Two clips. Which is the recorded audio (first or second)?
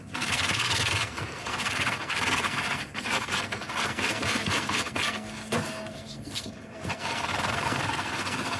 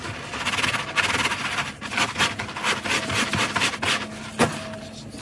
second